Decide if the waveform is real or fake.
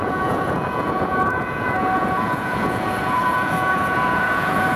fake